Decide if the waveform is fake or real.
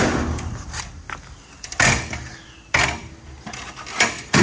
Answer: real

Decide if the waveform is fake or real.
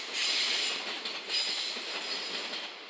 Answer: real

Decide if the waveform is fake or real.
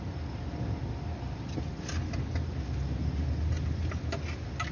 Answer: real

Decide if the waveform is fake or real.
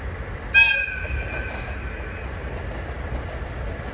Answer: real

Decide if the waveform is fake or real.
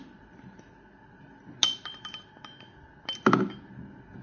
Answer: real